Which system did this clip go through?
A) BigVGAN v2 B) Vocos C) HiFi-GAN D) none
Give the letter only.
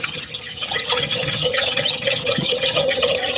C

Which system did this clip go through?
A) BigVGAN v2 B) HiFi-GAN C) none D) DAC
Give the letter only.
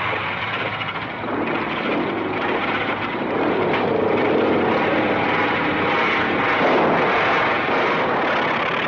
C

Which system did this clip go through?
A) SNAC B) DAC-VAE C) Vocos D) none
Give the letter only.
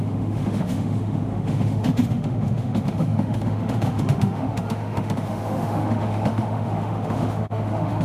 B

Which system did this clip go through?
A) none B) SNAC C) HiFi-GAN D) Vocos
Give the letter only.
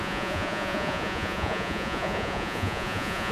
D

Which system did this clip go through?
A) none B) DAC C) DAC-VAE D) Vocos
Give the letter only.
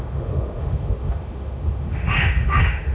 C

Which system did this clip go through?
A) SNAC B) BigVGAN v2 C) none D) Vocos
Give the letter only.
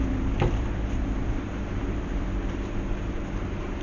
B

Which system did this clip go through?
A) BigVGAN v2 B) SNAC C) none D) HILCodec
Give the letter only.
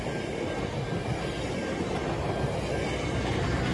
C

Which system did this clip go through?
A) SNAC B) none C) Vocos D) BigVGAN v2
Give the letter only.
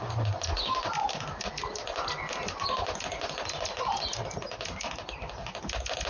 B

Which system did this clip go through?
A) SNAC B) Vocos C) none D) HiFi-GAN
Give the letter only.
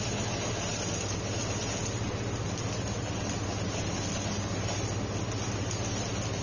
C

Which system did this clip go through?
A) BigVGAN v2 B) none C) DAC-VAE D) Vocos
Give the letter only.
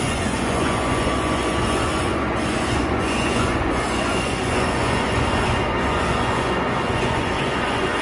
D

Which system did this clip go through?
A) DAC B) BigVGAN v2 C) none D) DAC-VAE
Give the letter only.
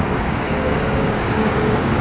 A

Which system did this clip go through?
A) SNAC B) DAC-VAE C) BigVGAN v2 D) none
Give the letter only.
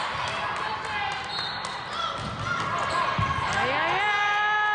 D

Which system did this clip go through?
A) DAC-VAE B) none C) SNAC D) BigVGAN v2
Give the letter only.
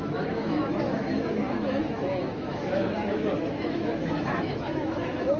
A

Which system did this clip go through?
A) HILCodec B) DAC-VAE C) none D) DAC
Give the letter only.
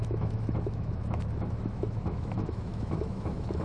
B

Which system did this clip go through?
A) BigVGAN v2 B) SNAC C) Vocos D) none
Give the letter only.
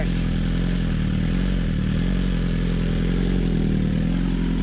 D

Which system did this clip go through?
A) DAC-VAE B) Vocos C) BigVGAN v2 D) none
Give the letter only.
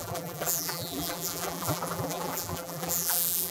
C